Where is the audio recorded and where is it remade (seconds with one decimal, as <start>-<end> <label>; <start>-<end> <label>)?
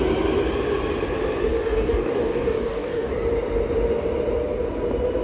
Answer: 0.0-1.5 recorded; 1.5-3.1 remade; 3.1-5.2 recorded